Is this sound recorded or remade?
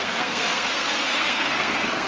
remade